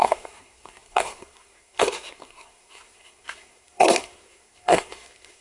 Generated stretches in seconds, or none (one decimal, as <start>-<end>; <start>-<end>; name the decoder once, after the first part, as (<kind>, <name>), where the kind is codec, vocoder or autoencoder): 0.0-5.4 (codec, SNAC)